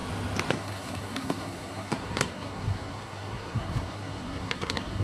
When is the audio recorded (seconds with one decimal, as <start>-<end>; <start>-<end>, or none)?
0.0-0.5